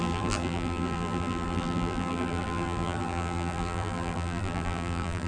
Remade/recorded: remade